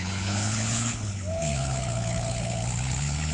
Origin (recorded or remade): remade